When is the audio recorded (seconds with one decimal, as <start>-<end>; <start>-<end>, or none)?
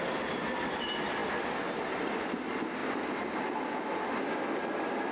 0.0-5.1